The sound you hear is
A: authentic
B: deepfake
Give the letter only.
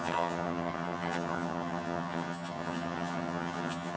B